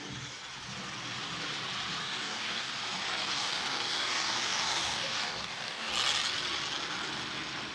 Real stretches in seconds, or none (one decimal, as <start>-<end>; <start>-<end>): 0.0-2.0; 2.7-3.2; 5.9-7.7